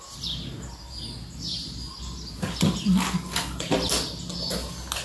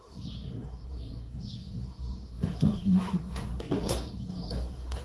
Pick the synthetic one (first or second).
second